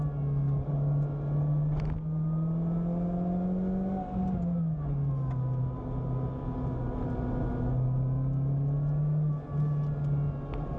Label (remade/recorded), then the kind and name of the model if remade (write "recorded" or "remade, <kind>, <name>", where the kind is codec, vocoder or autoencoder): recorded